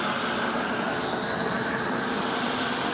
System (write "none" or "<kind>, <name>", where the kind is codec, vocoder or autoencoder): none